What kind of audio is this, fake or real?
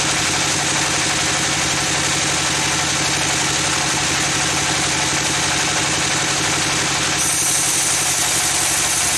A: real